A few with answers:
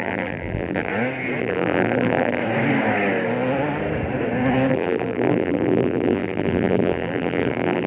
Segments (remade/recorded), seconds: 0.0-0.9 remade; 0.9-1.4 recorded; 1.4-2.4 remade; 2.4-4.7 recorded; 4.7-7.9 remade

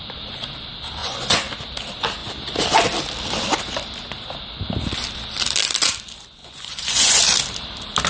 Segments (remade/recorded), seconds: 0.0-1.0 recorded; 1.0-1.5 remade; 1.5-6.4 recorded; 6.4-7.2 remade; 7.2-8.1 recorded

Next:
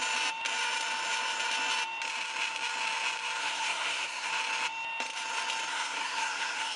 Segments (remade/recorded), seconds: 0.0-3.4 recorded; 3.4-4.3 remade; 4.3-5.7 recorded; 5.7-6.8 remade

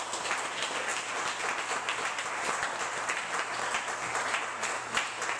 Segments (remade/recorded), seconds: 0.0-5.4 recorded